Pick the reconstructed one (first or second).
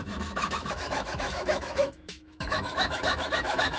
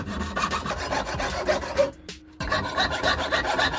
first